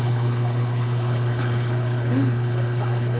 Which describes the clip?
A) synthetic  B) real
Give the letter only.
A